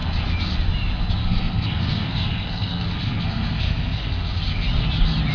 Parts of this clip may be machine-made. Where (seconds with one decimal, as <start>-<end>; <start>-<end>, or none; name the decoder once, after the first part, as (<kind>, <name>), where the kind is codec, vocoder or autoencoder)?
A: 1.2-4.4 (codec, SNAC)